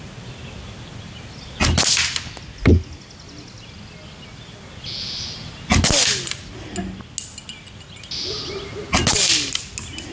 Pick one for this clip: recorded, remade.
recorded